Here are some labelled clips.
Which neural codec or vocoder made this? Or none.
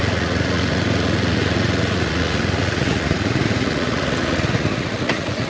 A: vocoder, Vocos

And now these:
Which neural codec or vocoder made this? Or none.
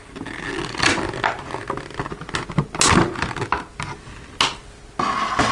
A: none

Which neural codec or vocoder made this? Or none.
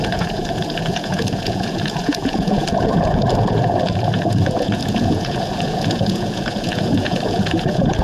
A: vocoder, Vocos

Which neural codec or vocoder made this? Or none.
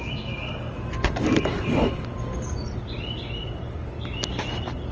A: none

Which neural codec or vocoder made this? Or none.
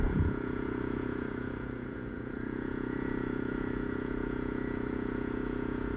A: vocoder, Vocos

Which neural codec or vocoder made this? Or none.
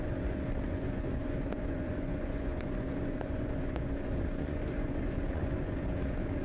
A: vocoder, Vocos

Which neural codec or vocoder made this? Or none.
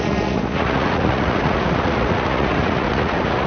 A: vocoder, Vocos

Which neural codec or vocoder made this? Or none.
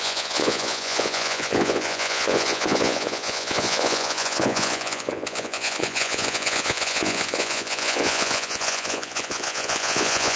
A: vocoder, Vocos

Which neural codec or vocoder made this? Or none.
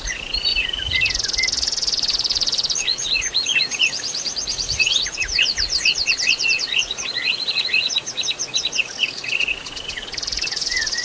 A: vocoder, Vocos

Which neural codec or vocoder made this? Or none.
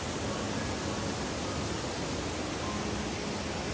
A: none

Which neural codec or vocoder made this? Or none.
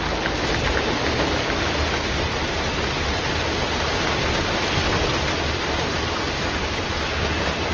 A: none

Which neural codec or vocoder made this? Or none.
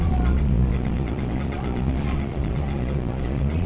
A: vocoder, Vocos